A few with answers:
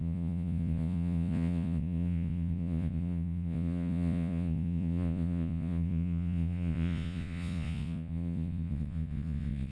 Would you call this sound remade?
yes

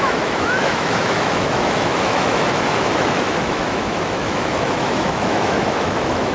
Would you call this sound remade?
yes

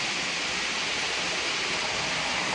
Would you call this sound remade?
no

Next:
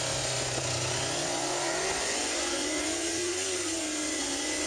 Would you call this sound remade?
yes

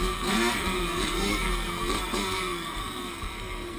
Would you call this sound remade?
yes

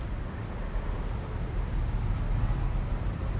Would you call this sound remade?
no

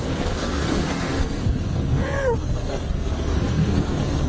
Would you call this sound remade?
yes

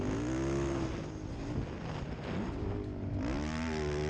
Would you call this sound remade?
no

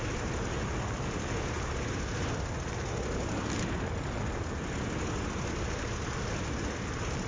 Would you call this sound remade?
no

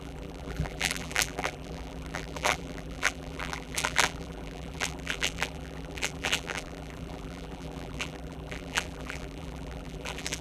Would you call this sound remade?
yes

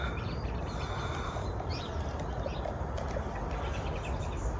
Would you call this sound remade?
no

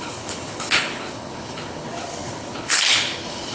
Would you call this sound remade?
yes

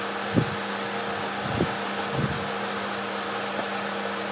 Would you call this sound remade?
no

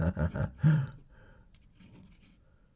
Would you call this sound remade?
yes